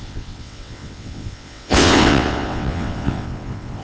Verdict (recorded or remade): remade